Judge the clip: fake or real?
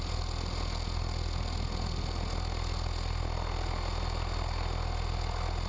real